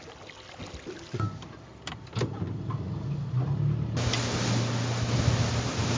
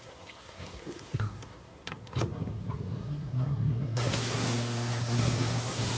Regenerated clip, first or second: second